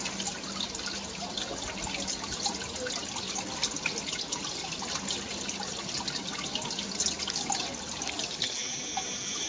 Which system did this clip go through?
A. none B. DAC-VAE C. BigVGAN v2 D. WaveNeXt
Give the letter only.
A